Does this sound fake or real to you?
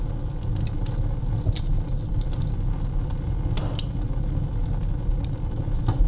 real